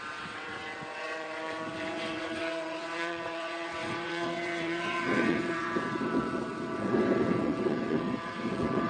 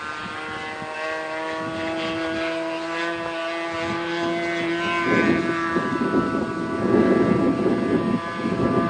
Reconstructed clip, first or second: first